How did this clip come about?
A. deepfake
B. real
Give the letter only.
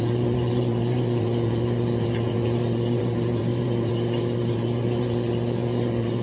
A